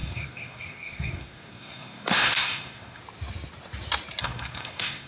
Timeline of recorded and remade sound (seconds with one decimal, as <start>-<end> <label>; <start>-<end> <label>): 0.0-3.0 remade; 3.0-4.2 recorded; 4.2-5.1 remade